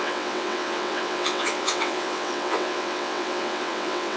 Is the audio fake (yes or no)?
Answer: yes